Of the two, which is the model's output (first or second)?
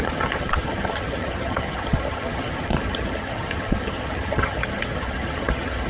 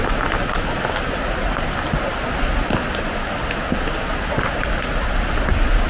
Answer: first